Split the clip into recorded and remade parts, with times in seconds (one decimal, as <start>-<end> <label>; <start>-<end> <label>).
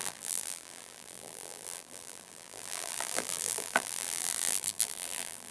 0.0-5.5 remade